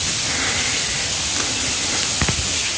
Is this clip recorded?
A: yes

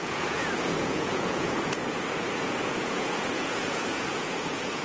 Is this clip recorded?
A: no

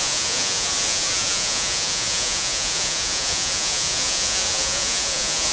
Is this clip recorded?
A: no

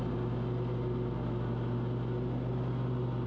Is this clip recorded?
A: yes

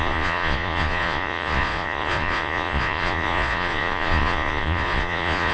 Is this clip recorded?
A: no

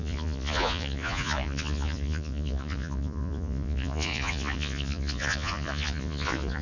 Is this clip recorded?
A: no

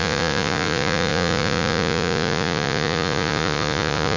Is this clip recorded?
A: no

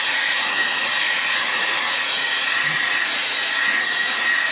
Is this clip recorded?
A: no